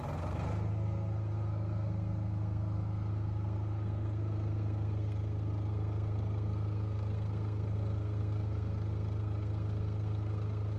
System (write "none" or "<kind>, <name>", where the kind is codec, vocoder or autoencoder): codec, SNAC